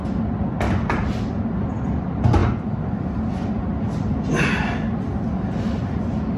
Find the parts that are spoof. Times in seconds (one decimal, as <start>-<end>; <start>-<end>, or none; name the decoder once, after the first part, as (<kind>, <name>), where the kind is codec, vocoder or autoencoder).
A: none